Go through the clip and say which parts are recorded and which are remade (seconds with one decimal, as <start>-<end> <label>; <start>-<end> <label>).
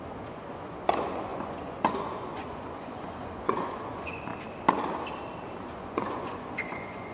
0.0-4.3 remade; 4.3-5.6 recorded; 5.6-7.1 remade